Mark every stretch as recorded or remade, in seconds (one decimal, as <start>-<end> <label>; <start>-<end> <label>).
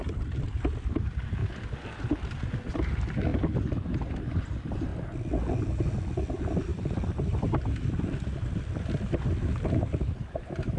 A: 0.0-1.4 remade; 1.4-2.7 recorded; 2.7-3.3 remade; 3.3-4.1 recorded; 4.1-4.9 remade; 4.9-5.6 recorded; 5.6-10.8 remade